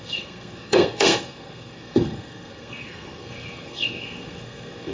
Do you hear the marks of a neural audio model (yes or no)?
yes